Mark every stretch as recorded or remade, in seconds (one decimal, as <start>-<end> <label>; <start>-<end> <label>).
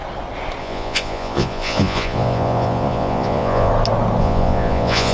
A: 0.0-0.6 recorded; 0.6-3.7 remade; 3.7-4.2 recorded; 4.2-5.1 remade